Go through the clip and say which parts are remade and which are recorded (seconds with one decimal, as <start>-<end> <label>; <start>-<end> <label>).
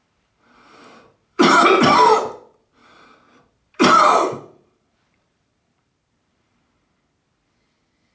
0.0-1.8 remade; 1.8-2.8 recorded; 2.8-6.6 remade; 6.6-8.1 recorded